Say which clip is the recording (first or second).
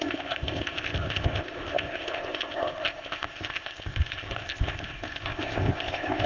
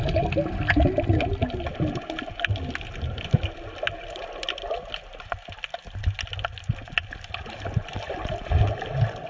second